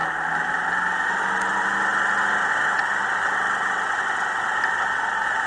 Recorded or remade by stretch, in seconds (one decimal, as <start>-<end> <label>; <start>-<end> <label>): 0.0-5.5 recorded